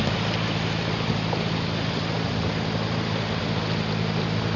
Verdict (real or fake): real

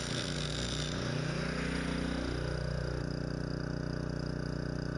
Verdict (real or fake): real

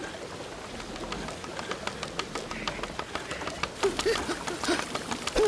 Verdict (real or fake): real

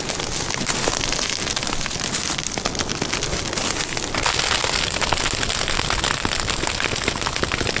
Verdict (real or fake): real